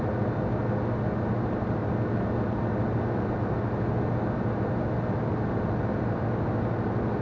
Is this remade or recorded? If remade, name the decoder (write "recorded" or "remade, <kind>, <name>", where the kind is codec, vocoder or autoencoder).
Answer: recorded